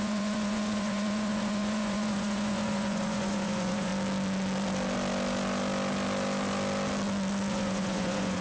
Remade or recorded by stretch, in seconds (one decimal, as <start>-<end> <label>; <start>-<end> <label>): 0.0-3.9 remade; 3.9-7.5 recorded; 7.5-8.4 remade